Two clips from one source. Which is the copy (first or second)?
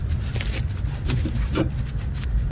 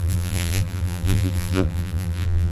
second